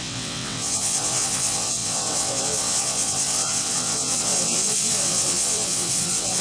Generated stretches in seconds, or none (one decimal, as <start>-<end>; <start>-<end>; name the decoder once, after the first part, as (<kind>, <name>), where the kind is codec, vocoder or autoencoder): 0.0-6.4 (vocoder, WaveNeXt)